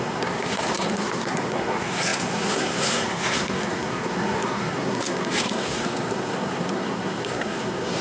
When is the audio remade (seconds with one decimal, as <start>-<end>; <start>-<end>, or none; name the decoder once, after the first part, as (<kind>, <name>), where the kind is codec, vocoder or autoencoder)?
0.0-8.0 (codec, SNAC)